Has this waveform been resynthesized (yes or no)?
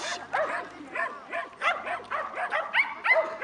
no